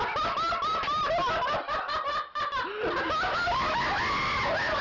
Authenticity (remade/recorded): recorded